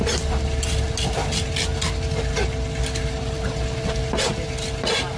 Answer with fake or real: real